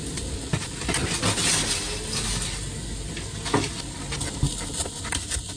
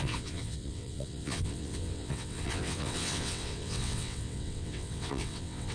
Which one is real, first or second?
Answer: first